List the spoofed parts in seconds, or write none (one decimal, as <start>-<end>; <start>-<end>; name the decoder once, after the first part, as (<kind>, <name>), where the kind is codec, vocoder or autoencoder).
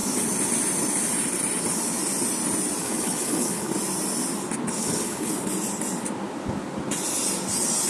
2.8-3.7 (codec, HILCodec); 4.8-5.3